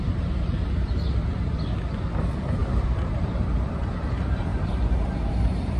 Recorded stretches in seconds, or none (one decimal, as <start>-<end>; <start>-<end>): 1.3-2.2